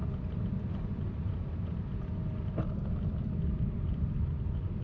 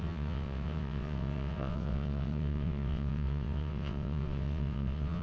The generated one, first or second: second